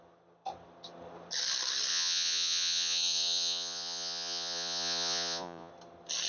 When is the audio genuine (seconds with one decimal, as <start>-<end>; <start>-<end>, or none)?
0.0-1.9; 5.7-6.3